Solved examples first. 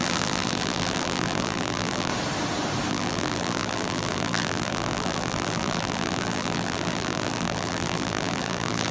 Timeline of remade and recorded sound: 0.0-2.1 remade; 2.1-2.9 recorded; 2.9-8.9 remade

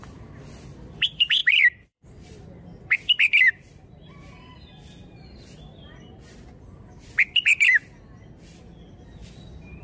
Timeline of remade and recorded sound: 0.0-5.0 remade; 5.0-8.2 recorded; 8.2-9.8 remade

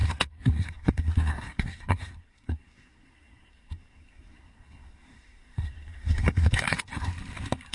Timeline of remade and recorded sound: 0.0-7.1 remade; 7.1-7.7 recorded

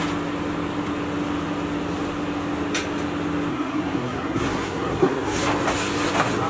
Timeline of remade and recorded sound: 0.0-3.5 recorded; 3.5-5.4 remade; 5.4-6.5 recorded

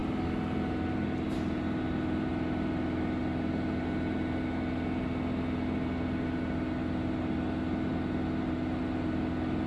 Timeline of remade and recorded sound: 0.0-9.7 recorded

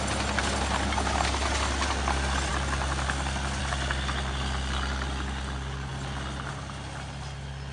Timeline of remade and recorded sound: 0.0-7.7 recorded

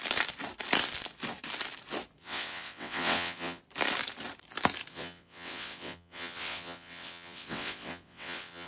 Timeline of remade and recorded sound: 0.0-2.2 recorded; 2.2-3.6 remade; 3.6-4.9 recorded; 4.9-8.7 remade

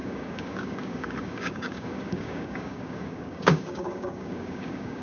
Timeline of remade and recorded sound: 0.0-5.0 remade